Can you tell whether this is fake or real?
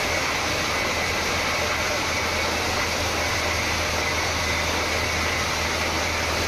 real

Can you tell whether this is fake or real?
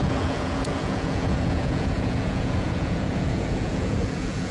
fake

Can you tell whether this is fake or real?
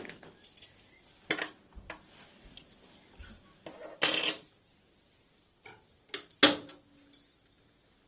real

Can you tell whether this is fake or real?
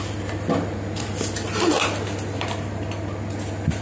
real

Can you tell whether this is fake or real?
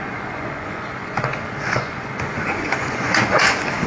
fake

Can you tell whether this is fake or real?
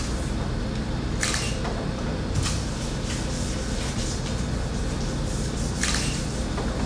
real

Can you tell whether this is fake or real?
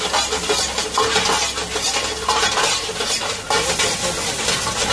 real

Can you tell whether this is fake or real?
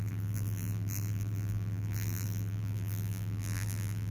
fake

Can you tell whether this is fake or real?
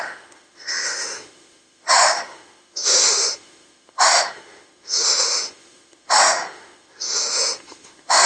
fake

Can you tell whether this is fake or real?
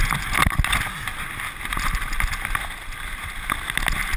real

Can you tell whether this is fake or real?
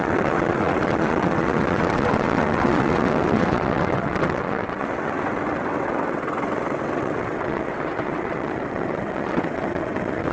fake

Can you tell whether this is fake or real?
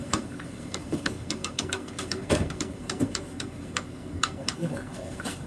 fake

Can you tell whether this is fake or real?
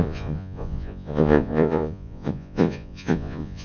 fake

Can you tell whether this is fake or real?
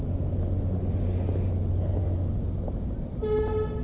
real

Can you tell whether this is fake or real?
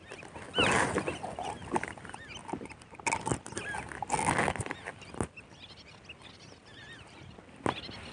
real